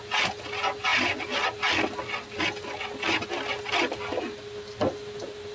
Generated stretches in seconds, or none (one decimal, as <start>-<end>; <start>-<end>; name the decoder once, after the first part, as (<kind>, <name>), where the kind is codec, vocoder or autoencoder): none